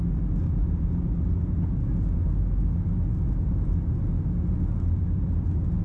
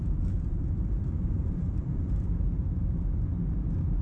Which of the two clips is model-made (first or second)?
second